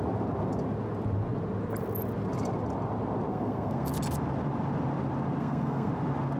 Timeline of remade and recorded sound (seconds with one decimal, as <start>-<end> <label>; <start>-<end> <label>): 0.0-3.3 recorded; 3.3-3.9 remade; 3.9-5.4 recorded; 5.4-5.9 remade; 5.9-6.4 recorded